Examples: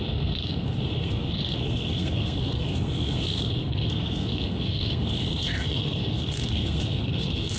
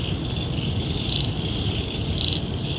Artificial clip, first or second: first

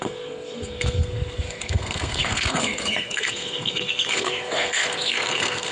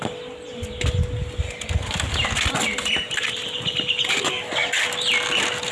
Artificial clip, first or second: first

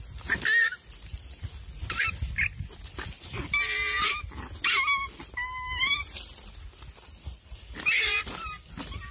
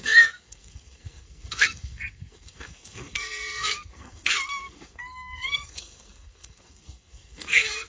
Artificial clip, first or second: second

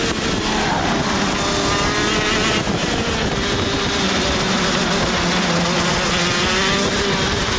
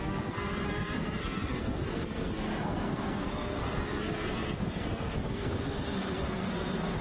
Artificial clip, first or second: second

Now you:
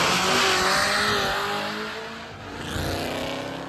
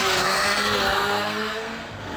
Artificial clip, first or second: second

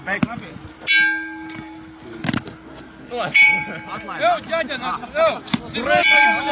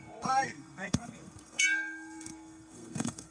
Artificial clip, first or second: second